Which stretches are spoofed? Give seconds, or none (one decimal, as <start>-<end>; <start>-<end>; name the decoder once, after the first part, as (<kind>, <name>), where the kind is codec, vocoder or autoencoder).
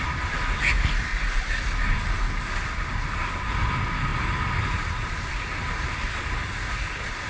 none